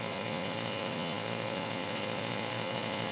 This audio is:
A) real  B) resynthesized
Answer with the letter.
B